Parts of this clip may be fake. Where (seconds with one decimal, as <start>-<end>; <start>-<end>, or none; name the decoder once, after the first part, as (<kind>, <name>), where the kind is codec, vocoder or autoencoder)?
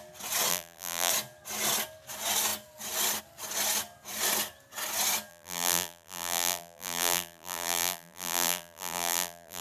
0.5-1.1 (vocoder, BigVGAN v2); 5.3-9.6